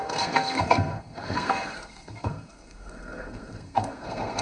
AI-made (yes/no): yes